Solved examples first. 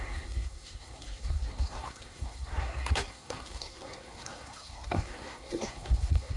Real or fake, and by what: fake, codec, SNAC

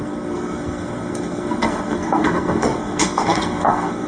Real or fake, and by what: fake, codec, SNAC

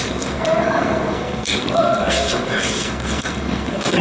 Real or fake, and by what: fake, codec, SNAC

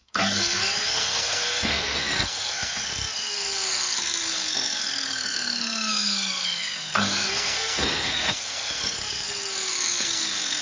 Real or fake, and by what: fake, codec, SNAC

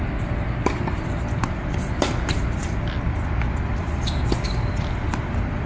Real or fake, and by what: real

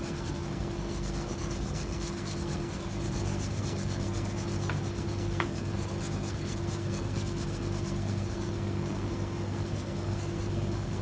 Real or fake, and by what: fake, codec, SNAC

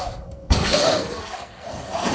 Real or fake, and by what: fake, codec, SNAC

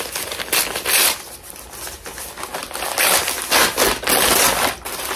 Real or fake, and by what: real